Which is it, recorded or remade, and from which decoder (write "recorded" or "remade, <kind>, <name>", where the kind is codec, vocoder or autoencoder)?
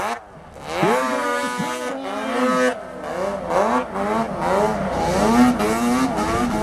recorded